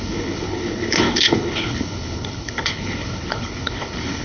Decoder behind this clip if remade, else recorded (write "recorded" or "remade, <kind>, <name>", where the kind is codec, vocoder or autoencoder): remade, codec, HILCodec